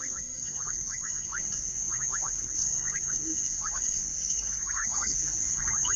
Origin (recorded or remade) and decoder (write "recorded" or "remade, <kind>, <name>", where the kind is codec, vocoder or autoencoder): remade, codec, SNAC